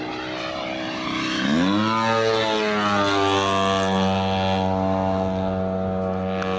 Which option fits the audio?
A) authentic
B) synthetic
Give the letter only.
A